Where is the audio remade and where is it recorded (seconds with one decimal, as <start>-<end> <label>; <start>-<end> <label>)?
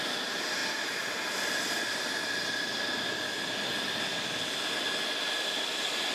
0.0-6.1 recorded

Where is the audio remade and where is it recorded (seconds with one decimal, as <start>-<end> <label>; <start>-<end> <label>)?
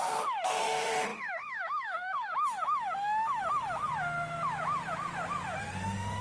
0.0-3.9 remade; 3.9-5.6 recorded; 5.6-6.2 remade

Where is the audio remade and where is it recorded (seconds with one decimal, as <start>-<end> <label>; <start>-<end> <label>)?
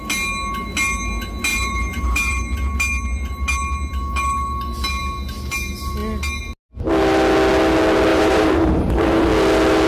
0.0-1.5 recorded; 1.5-2.4 remade; 2.4-8.1 recorded; 8.1-9.3 remade; 9.3-9.9 recorded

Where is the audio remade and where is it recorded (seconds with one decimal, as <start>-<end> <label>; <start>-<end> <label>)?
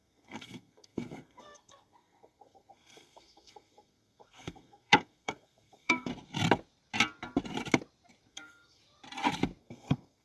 0.0-6.1 remade; 6.1-8.3 recorded; 8.3-8.8 remade; 8.8-9.6 recorded; 9.6-10.2 remade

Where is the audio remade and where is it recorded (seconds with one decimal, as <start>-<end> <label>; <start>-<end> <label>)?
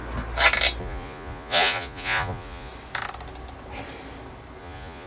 0.0-0.8 recorded; 0.8-2.7 remade; 2.7-4.6 recorded; 4.6-5.1 remade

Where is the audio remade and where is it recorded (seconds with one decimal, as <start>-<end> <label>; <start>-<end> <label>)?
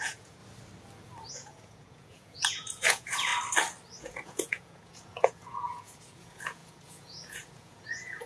0.0-0.4 remade; 0.4-1.3 recorded; 1.3-3.3 remade; 3.3-4.0 recorded; 4.0-8.3 remade